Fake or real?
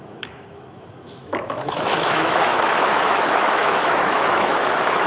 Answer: fake